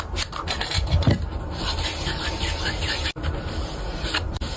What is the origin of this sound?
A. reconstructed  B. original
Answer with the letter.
B